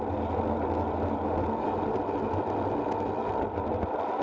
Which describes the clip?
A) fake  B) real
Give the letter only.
B